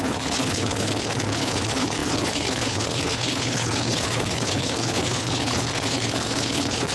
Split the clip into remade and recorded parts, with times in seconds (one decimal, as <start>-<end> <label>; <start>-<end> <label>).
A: 0.0-6.9 remade